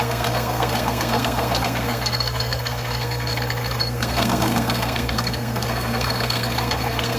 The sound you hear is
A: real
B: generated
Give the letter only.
B